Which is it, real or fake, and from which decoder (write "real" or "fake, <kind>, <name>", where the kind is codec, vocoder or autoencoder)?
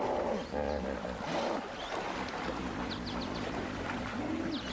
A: real